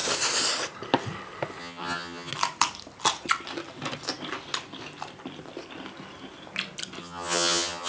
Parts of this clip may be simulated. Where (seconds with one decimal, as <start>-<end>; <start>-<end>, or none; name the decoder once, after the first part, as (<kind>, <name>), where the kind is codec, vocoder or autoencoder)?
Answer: 1.6-2.3 (vocoder, HiFi-GAN); 7.0-7.9